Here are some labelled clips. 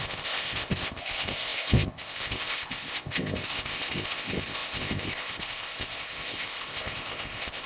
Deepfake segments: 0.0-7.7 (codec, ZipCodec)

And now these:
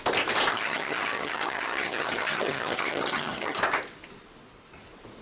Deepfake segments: 0.5-3.6 (vocoder, HiFi-GAN)

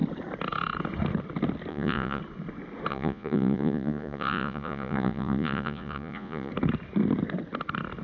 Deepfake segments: 1.7-2.2 (vocoder, Vocos); 2.9-6.5

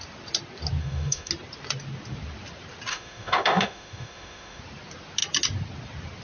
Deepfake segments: 0.8-1.3 (autoencoder, DAC-VAE); 2.9-4.6

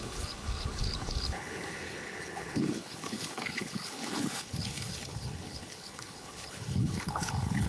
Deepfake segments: 0.0-7.7 (codec, HILCodec)

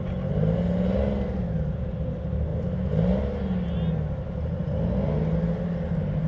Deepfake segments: none

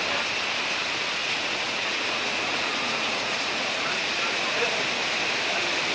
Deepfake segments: 1.2-4.7 (vocoder, Vocos)